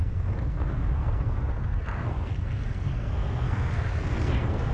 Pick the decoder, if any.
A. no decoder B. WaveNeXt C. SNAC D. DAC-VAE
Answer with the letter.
C